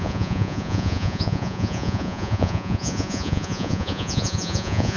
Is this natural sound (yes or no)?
no